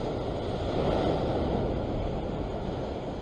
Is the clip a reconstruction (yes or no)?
no